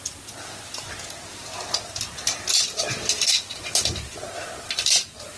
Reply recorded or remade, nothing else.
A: recorded